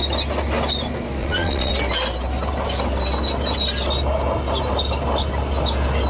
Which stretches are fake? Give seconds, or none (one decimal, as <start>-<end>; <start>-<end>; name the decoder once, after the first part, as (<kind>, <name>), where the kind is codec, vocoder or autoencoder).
1.2-1.7 (vocoder, Vocos)